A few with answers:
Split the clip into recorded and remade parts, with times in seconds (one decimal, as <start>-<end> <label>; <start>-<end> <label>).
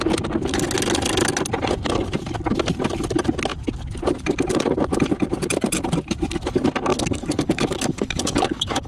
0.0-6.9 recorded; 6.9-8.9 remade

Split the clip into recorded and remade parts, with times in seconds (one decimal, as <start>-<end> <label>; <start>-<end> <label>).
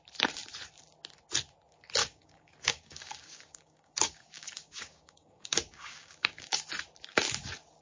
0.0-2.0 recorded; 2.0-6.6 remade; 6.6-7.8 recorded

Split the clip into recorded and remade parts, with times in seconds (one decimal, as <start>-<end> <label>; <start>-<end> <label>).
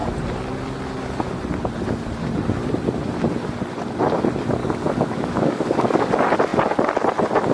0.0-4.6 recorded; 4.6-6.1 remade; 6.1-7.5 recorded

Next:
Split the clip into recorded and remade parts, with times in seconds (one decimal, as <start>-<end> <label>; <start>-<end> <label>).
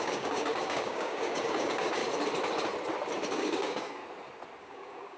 0.0-2.0 remade; 2.0-3.3 recorded; 3.3-4.0 remade; 4.0-4.6 recorded; 4.6-5.2 remade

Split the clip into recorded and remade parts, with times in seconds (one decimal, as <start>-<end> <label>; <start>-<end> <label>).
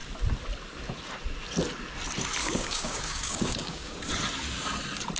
0.0-2.4 recorded; 2.4-4.1 remade; 4.1-5.2 recorded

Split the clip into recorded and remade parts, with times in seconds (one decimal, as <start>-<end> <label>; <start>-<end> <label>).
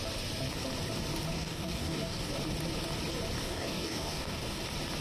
0.0-1.3 recorded; 1.3-2.3 remade; 2.3-3.4 recorded; 3.4-4.6 remade; 4.6-5.0 recorded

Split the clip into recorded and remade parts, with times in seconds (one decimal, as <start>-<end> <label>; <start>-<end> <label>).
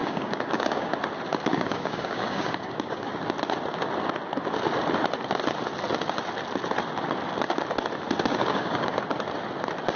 0.0-0.9 remade; 0.9-1.3 recorded; 1.3-3.1 remade; 3.1-8.3 recorded; 8.3-9.0 remade; 9.0-10.0 recorded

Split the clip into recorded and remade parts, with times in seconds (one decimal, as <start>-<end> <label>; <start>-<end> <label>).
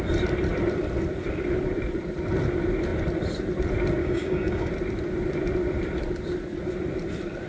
0.0-4.0 recorded; 4.0-4.7 remade; 4.7-7.5 recorded